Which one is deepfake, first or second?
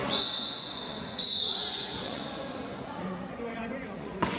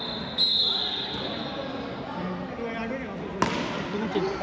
first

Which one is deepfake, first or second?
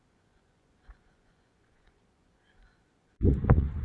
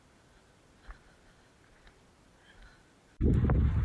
first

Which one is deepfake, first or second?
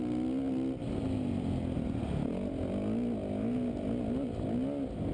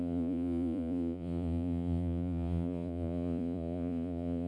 second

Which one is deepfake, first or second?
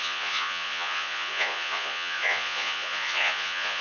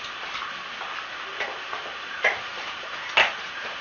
first